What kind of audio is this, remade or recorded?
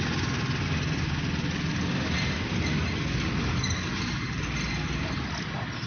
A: recorded